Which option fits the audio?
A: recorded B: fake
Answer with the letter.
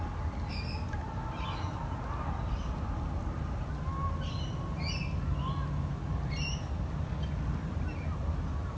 A